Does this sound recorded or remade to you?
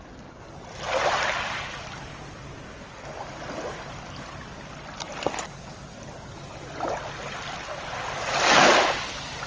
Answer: recorded